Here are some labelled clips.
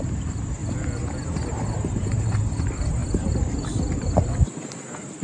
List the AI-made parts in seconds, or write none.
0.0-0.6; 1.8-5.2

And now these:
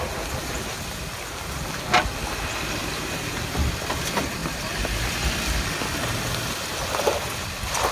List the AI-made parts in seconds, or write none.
4.4-5.1

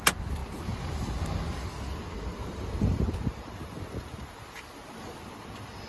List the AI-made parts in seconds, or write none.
2.3-5.9

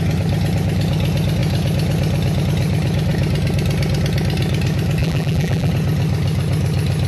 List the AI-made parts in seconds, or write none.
5.0-5.7